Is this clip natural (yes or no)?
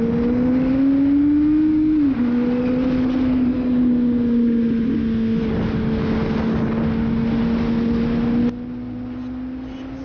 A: yes